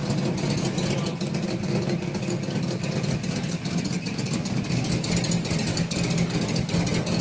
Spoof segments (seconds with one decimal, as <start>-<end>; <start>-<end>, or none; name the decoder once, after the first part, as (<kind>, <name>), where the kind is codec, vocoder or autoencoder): 5.7-6.8 (codec, DAC)